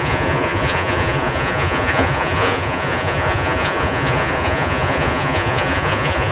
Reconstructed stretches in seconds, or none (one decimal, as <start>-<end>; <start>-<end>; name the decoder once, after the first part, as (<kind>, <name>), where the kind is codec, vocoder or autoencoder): 0.0-6.3 (vocoder, Vocos)